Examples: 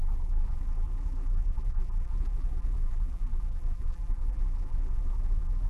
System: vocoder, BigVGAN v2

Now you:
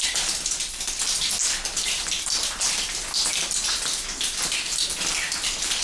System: none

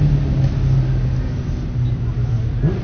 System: none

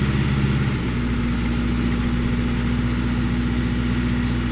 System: none